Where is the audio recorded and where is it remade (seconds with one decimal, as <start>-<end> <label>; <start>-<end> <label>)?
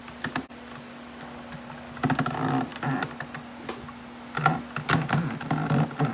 0.0-6.1 recorded